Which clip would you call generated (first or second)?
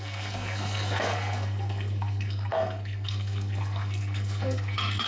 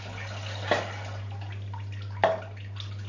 first